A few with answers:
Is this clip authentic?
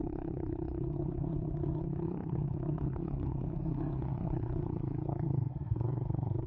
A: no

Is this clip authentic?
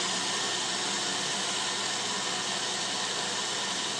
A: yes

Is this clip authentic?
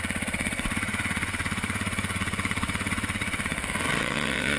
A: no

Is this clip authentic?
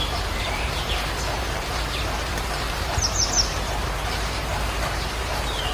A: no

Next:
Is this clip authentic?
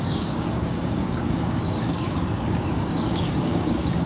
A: no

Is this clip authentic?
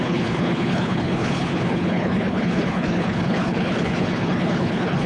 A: no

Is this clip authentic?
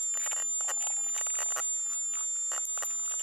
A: yes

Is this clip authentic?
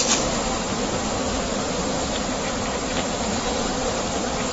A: no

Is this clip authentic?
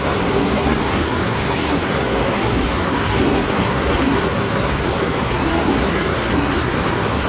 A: no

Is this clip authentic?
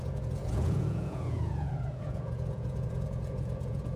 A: no